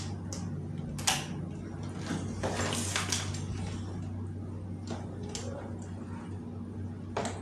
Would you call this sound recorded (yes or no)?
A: yes